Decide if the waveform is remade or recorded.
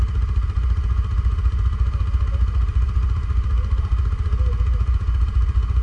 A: recorded